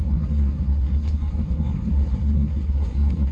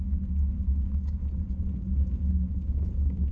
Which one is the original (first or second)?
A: second